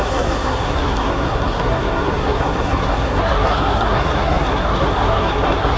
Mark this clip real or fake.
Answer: fake